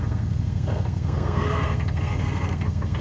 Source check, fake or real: fake